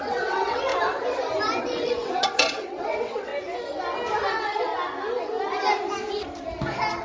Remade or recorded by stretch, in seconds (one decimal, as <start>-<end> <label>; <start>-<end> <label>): 0.0-0.7 remade; 0.7-1.6 recorded; 1.6-3.3 remade; 3.3-4.3 recorded; 4.3-4.7 remade; 4.7-7.0 recorded